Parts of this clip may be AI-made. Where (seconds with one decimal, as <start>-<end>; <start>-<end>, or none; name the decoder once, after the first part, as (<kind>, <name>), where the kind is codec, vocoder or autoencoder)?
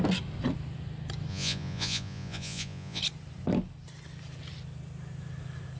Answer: 1.3-3.0 (vocoder, Vocos)